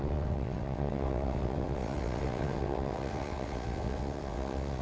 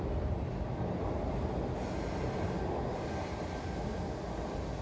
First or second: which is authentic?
second